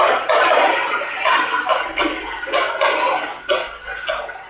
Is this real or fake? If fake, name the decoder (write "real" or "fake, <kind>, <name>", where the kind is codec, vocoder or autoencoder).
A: real